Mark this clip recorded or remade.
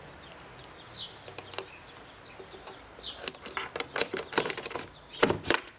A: recorded